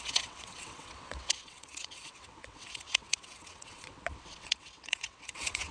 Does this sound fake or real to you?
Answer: fake